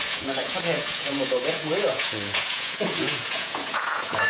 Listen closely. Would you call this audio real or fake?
fake